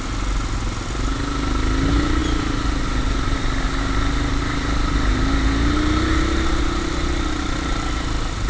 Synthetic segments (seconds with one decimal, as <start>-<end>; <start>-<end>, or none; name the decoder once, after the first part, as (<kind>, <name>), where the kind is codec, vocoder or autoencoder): none